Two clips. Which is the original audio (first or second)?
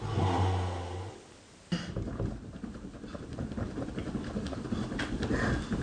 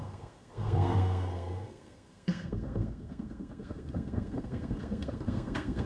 first